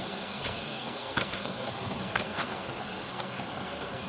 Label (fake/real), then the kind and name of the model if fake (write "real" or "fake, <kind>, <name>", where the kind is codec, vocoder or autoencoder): fake, codec, SNAC